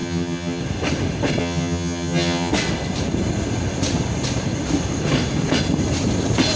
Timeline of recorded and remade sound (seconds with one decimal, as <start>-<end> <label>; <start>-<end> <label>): 0.0-0.6 remade; 0.6-1.4 recorded; 1.4-2.5 remade; 2.5-6.6 recorded